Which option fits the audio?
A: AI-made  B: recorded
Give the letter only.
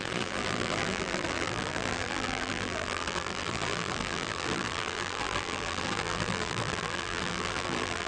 A